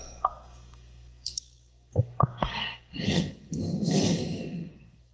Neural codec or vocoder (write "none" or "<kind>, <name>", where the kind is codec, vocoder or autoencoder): codec, SNAC